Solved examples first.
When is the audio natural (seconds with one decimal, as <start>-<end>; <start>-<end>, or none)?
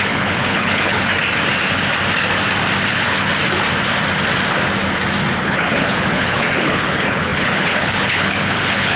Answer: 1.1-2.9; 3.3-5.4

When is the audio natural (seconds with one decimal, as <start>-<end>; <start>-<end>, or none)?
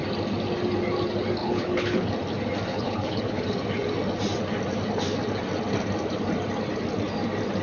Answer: 0.0-1.4; 2.1-2.7; 3.4-7.6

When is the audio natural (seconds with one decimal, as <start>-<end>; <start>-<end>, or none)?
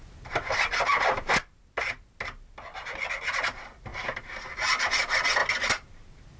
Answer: 0.0-6.4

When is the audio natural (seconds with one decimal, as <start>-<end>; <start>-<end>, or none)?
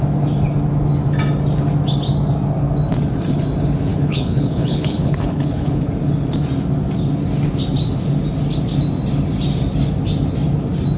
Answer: 0.0-3.9; 5.9-11.0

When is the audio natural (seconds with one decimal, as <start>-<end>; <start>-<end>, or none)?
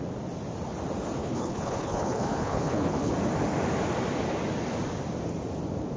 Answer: 0.0-1.2; 3.1-6.0